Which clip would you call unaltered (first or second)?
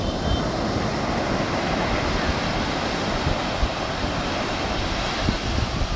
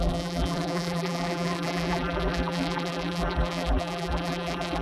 first